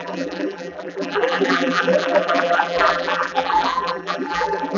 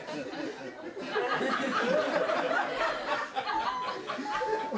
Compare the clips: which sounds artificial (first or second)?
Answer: first